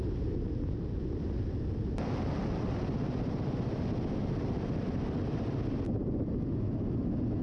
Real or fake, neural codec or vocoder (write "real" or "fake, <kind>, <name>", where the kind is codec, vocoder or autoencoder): real